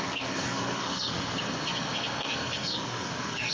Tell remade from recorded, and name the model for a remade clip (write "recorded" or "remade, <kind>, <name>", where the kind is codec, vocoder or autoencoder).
remade, codec, SNAC